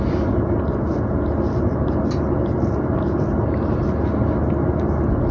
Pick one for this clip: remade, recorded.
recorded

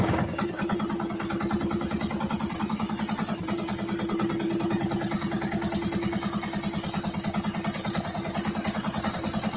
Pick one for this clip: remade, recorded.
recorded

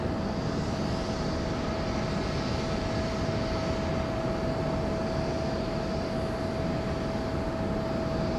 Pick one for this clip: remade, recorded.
recorded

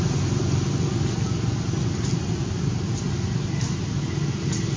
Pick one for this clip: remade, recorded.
recorded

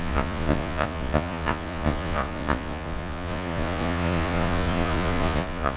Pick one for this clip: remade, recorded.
remade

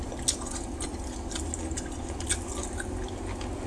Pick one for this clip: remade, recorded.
recorded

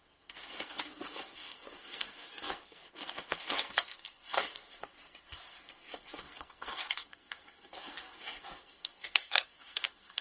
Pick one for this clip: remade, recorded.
remade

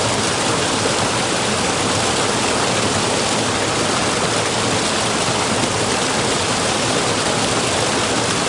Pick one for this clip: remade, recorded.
recorded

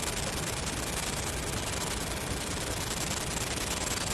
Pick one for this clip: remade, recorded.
recorded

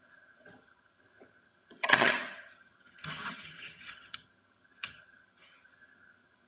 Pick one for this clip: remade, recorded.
remade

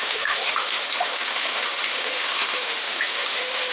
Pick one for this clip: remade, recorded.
remade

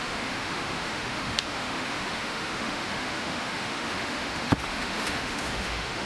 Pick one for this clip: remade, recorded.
remade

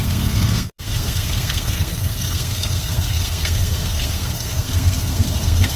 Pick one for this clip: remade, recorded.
remade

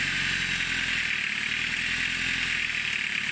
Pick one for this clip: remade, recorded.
recorded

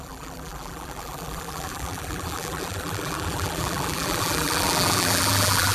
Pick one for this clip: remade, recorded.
remade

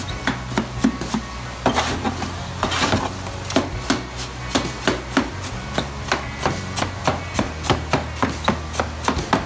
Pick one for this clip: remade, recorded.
recorded